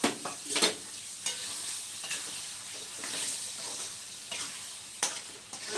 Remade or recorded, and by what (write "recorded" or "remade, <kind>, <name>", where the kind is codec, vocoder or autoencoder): remade, vocoder, BigVGAN v2